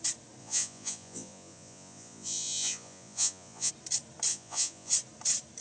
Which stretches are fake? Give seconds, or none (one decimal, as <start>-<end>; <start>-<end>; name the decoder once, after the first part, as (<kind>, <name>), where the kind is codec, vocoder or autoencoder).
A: 0.4-3.7 (vocoder, Vocos); 4.3-4.9